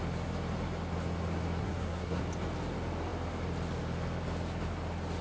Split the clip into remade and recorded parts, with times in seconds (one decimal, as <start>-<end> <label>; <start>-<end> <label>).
0.0-1.6 recorded; 1.6-2.2 remade; 2.2-5.2 recorded